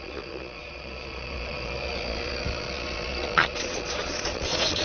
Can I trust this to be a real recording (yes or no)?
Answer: no